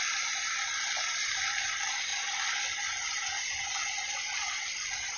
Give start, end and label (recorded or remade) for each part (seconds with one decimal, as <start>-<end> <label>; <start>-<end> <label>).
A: 0.0-5.2 recorded